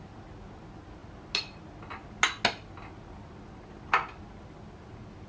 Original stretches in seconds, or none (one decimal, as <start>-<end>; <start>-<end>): 0.0-5.3